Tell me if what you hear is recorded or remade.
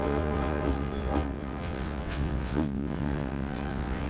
remade